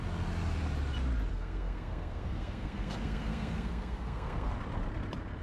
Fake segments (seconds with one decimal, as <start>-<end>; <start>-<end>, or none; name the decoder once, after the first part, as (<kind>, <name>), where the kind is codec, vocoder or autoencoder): 1.3-4.5 (codec, SNAC)